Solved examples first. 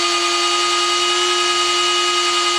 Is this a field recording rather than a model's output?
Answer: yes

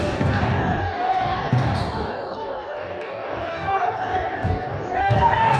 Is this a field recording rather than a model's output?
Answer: no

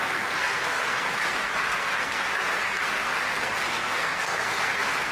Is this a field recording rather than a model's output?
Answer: no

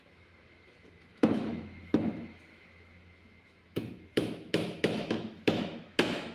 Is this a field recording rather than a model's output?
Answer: no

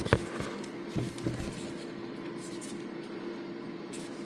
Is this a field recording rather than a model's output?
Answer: yes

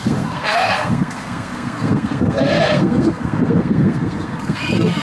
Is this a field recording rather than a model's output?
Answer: no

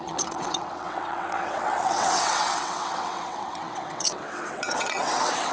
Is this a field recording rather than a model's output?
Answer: no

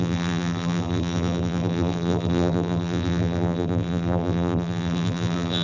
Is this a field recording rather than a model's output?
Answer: no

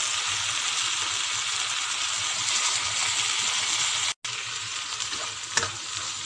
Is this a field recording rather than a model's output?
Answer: yes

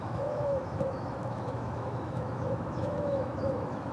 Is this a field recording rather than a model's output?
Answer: no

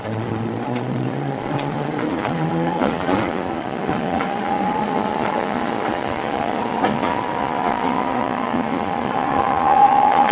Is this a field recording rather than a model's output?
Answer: no